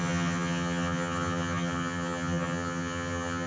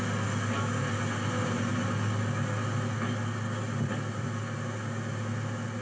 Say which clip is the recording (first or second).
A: second